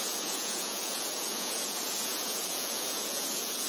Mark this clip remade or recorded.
remade